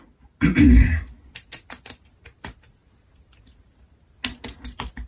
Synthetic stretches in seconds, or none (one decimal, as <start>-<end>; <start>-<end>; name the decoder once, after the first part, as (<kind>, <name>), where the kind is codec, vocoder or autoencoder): none

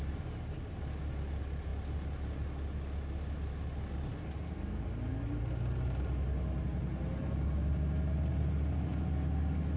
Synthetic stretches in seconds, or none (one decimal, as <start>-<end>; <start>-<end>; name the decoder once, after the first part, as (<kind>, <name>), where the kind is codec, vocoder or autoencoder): none

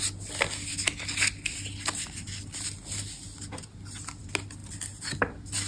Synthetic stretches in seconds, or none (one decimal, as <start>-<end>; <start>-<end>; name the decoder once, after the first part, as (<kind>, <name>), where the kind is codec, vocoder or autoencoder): none

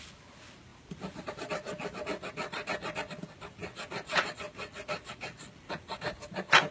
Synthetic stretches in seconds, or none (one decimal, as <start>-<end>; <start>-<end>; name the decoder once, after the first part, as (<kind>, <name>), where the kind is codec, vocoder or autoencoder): none

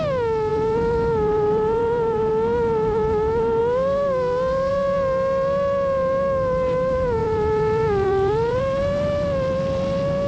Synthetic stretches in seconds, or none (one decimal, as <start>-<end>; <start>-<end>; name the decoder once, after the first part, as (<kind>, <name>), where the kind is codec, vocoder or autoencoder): 0.5-2.3 (vocoder, BigVGAN v2); 7.2-8.6

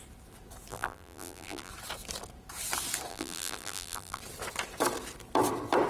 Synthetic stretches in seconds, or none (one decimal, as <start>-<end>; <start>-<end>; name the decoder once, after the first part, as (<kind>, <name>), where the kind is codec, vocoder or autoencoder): 0.7-1.7 (vocoder, BigVGAN v2); 3.1-4.2

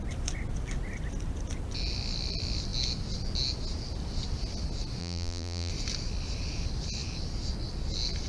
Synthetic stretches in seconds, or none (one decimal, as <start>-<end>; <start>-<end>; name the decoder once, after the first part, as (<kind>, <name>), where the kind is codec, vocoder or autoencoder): 5.0-5.7 (vocoder, BigVGAN v2)

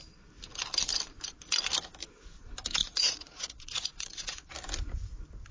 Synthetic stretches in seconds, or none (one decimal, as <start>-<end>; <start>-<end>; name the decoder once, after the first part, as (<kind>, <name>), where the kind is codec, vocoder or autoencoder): 2.8-4.5 (vocoder, Vocos)